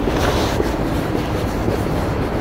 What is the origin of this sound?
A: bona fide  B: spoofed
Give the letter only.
A